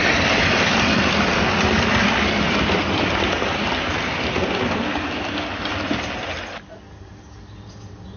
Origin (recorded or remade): recorded